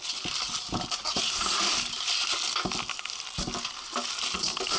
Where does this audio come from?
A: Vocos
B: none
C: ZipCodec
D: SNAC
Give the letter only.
B